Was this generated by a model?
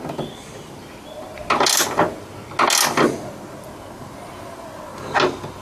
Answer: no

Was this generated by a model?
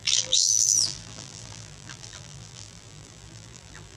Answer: yes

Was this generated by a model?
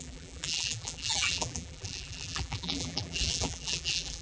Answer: yes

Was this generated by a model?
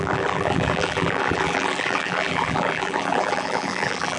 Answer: yes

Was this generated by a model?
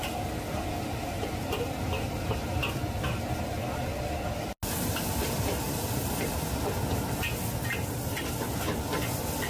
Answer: no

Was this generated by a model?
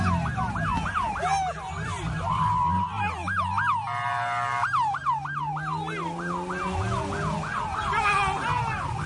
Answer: no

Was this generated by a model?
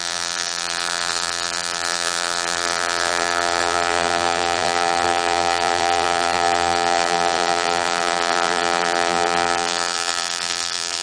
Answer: yes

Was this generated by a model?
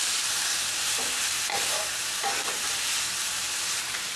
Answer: yes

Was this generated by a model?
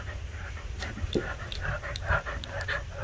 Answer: yes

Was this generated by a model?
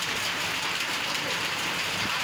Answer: yes